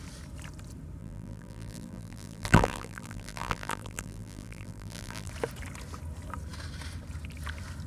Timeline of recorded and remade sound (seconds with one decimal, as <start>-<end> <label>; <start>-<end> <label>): 0.0-1.0 recorded; 1.0-5.3 remade; 5.3-7.9 recorded